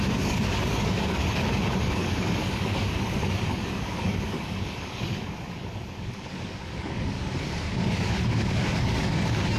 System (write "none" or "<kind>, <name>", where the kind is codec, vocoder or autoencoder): codec, DAC